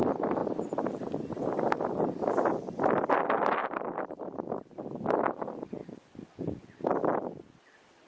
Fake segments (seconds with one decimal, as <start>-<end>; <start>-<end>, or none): 0.4-2.3; 3.6-4.9; 5.8-7.4